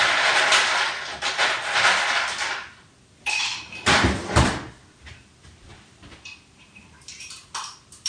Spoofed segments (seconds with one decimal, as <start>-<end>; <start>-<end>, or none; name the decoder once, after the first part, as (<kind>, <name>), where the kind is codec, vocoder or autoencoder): 0.0-3.5 (vocoder, BigVGAN v2); 5.1-8.1